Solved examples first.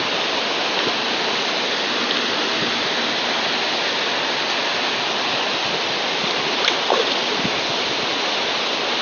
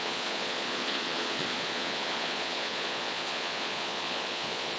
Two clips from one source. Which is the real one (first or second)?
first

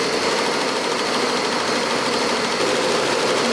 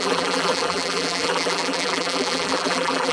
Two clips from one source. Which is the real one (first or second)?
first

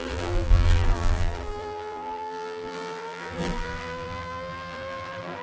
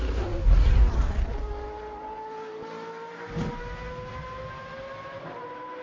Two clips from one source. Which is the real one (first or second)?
second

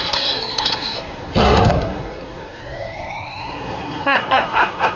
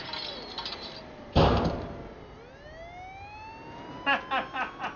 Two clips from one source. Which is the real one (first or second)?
second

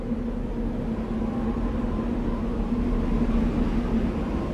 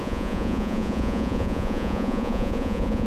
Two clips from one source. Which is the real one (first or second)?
first